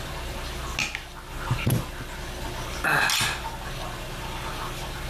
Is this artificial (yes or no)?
no